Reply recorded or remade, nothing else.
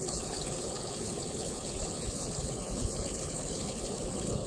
remade